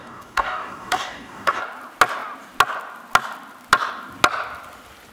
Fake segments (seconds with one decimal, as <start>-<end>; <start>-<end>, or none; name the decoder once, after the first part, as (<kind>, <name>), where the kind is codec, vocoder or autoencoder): 0.0-1.6 (codec, DAC)